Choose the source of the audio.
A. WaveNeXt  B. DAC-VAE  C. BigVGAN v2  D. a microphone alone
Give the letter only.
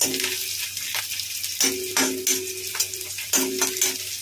D